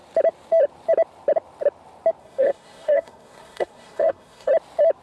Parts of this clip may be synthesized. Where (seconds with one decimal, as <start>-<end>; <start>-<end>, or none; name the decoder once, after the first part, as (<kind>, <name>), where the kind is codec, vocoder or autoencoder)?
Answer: 2.2-4.5 (codec, SNAC)

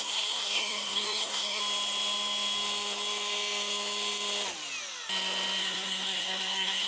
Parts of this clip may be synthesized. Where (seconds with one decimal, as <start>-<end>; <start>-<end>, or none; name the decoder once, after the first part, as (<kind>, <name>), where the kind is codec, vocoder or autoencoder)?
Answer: 0.0-1.6 (codec, SNAC); 5.6-6.9

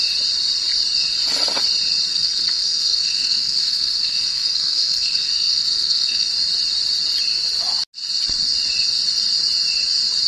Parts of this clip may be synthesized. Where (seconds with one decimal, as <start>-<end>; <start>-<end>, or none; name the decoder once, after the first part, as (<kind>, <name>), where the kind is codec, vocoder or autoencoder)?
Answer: 2.1-6.3 (codec, SNAC)

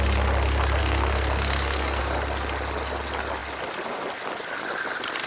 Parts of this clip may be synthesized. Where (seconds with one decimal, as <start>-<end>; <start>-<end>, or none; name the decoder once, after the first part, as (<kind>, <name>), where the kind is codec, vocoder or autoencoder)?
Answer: 0.8-2.0 (codec, SNAC)

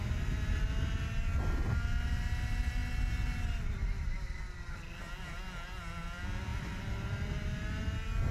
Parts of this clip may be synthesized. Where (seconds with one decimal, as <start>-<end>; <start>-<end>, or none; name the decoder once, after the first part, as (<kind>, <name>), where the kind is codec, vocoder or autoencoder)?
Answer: none